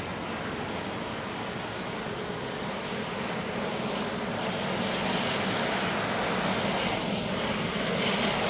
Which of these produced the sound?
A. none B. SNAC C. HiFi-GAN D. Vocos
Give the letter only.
A